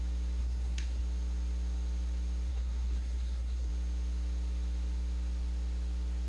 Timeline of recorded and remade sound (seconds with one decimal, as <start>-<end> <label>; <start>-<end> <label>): 0.0-0.4 recorded; 0.4-1.0 remade; 1.0-2.5 recorded; 2.5-3.7 remade; 3.7-6.3 recorded